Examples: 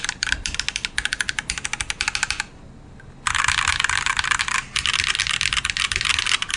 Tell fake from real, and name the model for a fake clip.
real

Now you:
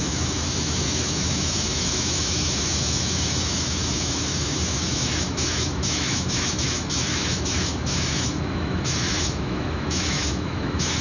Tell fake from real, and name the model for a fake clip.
fake, autoencoder, DAC-VAE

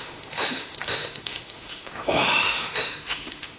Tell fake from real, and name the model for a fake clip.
fake, autoencoder, DAC-VAE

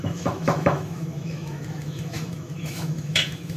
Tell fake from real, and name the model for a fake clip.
fake, autoencoder, DAC-VAE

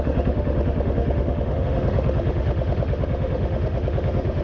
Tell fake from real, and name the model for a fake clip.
fake, autoencoder, DAC-VAE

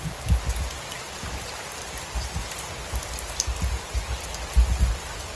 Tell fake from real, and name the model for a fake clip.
real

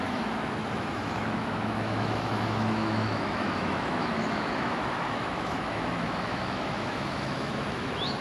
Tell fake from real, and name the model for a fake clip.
fake, autoencoder, DAC-VAE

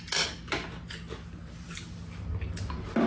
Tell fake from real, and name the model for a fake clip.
real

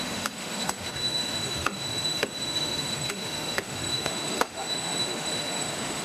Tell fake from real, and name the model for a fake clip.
fake, autoencoder, DAC-VAE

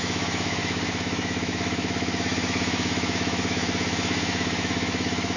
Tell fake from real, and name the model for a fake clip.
fake, autoencoder, DAC-VAE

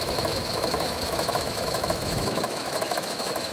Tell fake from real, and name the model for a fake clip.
fake, autoencoder, DAC-VAE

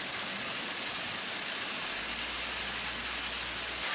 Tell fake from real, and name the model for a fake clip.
real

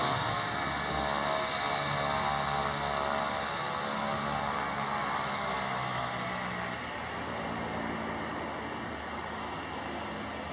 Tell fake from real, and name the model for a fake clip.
real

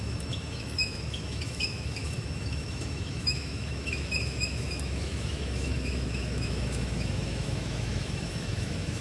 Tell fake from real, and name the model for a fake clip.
fake, autoencoder, DAC-VAE